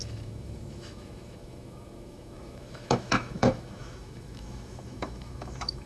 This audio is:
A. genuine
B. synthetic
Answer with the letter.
B